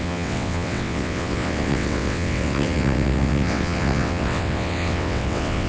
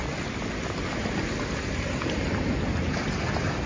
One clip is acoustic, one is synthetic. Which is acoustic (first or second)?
second